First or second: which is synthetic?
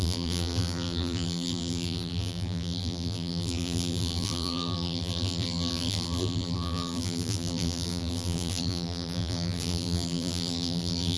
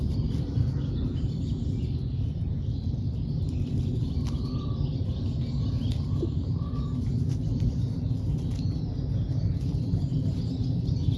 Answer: first